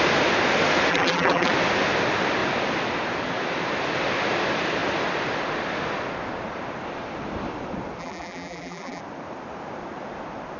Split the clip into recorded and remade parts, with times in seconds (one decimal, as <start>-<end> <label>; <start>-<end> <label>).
0.0-0.9 recorded; 0.9-1.5 remade; 1.5-8.0 recorded; 8.0-9.0 remade; 9.0-10.6 recorded